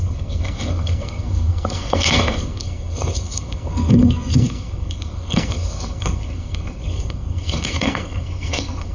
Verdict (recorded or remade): remade